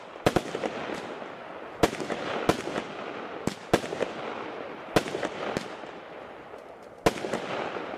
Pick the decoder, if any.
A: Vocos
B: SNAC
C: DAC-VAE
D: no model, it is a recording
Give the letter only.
D